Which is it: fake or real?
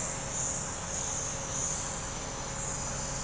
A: real